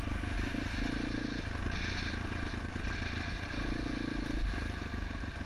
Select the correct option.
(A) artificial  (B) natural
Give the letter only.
B